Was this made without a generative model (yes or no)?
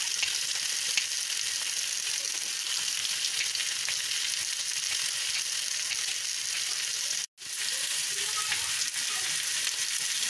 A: yes